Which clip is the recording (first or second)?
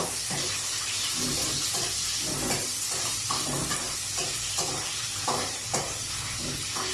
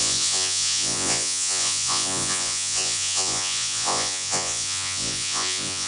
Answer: first